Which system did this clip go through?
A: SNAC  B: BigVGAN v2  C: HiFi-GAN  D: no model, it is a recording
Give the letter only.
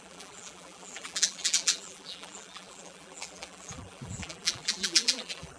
B